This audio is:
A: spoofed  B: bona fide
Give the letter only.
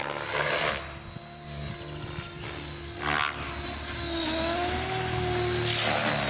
B